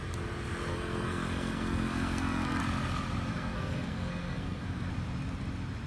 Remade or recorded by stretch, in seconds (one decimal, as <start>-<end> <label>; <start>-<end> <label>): 0.0-0.7 recorded; 0.7-2.6 remade; 2.6-3.3 recorded; 3.3-4.9 remade; 4.9-5.9 recorded